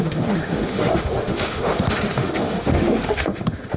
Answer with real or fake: fake